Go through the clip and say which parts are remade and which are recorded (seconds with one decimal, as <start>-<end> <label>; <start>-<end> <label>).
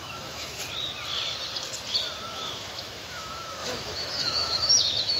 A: 0.0-0.6 remade; 0.6-2.3 recorded; 2.3-5.2 remade